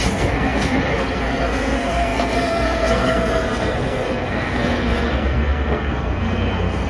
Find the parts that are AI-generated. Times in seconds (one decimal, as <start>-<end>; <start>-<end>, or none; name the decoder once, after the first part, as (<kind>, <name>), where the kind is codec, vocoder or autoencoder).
0.0-6.9 (codec, SNAC)